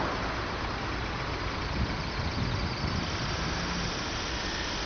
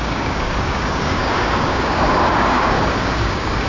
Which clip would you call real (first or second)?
first